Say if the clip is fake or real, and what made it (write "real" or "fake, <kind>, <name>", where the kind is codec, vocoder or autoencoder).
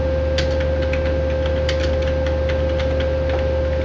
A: real